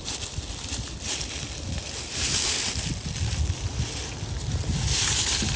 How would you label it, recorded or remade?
recorded